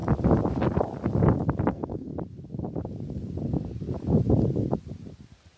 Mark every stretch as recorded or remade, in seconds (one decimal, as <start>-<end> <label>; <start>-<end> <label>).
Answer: 0.0-1.7 recorded; 1.7-2.1 remade; 2.1-5.6 recorded